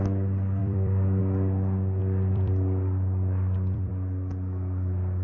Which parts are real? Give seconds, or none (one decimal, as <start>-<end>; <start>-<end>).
0.0-0.6; 1.2-2.0; 3.9-5.2